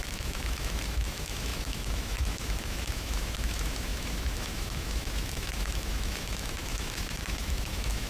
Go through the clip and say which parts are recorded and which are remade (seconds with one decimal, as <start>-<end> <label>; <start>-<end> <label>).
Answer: 0.0-8.1 remade

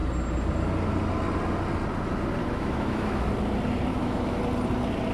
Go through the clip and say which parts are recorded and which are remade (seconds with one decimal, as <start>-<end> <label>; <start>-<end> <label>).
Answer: 0.0-2.4 recorded; 2.4-3.2 remade; 3.2-3.9 recorded; 3.9-4.4 remade; 4.4-5.1 recorded

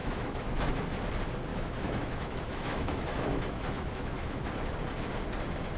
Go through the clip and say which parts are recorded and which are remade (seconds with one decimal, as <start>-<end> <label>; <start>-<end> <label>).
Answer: 0.0-0.7 remade; 0.7-1.5 recorded; 1.5-4.5 remade; 4.5-5.8 recorded